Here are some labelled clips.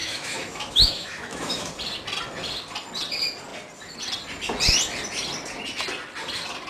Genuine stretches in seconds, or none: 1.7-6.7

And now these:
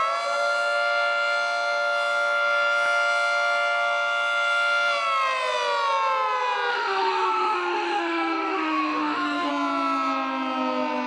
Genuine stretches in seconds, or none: 0.0-6.7; 9.5-11.1

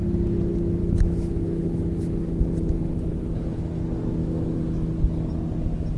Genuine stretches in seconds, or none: 0.0-0.8; 3.6-4.2; 4.9-6.0

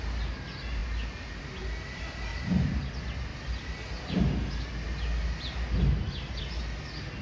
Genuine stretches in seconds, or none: 0.0-7.2

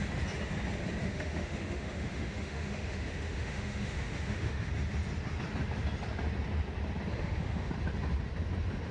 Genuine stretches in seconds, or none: 0.0-1.0; 4.7-7.1; 7.7-8.9